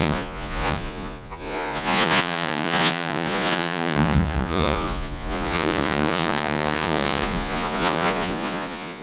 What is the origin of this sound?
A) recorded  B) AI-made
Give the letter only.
B